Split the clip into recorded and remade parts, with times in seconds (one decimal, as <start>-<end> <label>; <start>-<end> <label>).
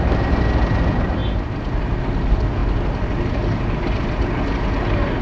0.0-5.2 recorded